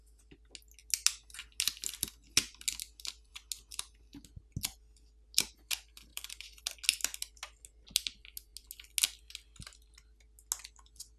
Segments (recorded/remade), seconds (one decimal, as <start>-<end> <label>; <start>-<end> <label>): 0.0-6.1 recorded; 6.1-6.6 remade; 6.6-11.2 recorded